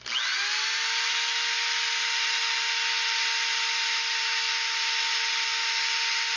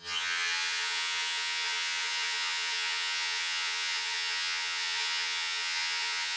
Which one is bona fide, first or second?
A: first